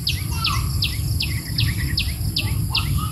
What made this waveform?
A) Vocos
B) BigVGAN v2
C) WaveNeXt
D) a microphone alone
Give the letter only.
D